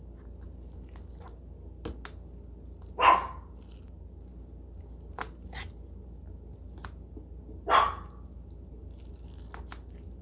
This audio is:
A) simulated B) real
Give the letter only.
B